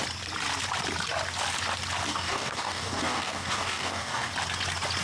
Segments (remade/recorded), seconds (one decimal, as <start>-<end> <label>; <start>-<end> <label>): 0.0-2.1 recorded; 2.1-4.3 remade; 4.3-5.0 recorded

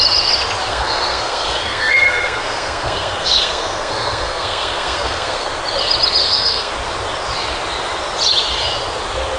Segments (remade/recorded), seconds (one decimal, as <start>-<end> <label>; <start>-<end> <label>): 0.0-0.7 recorded; 0.7-5.5 remade; 5.5-6.2 recorded; 6.2-6.7 remade; 6.7-9.4 recorded

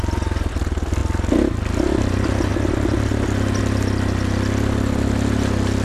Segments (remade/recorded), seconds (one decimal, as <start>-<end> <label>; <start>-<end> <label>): 0.0-5.8 recorded

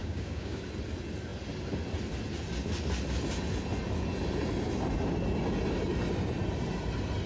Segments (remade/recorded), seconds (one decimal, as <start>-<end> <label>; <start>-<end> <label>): 0.0-0.6 remade; 0.6-7.3 recorded

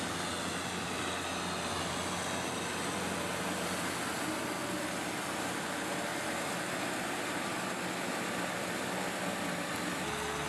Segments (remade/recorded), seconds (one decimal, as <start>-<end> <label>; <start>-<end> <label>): 0.0-10.5 recorded

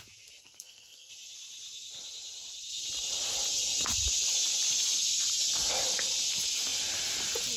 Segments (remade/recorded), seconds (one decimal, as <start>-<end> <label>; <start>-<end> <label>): 0.0-0.4 recorded; 0.4-1.1 remade; 1.1-7.6 recorded